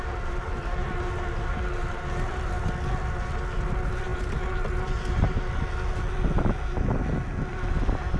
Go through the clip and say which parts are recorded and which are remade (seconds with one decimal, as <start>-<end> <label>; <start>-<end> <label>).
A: 0.0-8.2 recorded

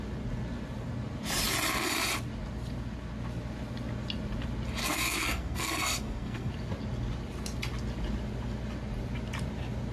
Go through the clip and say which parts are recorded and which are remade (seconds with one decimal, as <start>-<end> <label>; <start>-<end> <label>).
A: 0.0-4.8 recorded; 4.8-6.5 remade; 6.5-9.9 recorded

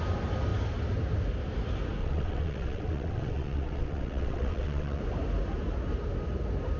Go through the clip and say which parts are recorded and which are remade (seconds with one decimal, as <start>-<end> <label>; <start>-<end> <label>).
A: 0.0-2.0 recorded; 2.0-5.0 remade; 5.0-6.8 recorded

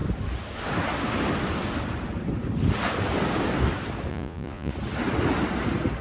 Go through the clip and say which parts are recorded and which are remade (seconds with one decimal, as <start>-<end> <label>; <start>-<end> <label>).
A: 0.0-4.1 recorded; 4.1-4.7 remade; 4.7-6.0 recorded

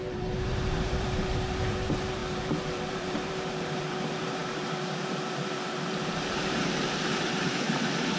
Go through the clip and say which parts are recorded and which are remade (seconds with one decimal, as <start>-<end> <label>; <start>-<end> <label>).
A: 0.0-8.2 remade

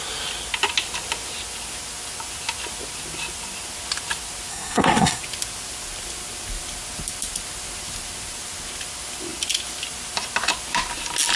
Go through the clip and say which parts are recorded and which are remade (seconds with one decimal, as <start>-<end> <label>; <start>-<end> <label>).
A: 0.0-4.5 recorded; 4.5-5.2 remade; 5.2-11.4 recorded

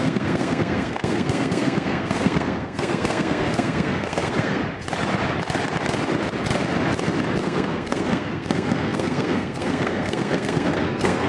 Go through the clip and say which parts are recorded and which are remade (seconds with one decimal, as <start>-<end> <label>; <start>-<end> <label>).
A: 0.0-4.6 remade; 4.6-7.4 recorded; 7.4-11.3 remade

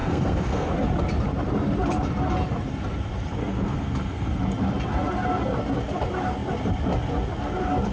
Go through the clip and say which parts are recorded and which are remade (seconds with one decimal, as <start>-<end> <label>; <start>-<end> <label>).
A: 0.0-0.7 remade; 0.7-3.4 recorded; 3.4-4.4 remade; 4.4-7.9 recorded